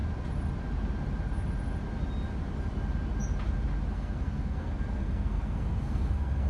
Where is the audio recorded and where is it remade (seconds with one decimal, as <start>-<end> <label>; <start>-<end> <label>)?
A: 0.0-3.9 recorded; 3.9-6.5 remade